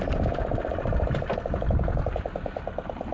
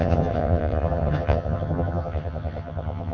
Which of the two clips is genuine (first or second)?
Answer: first